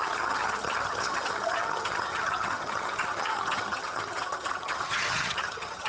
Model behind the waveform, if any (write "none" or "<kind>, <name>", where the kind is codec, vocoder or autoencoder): vocoder, HiFi-GAN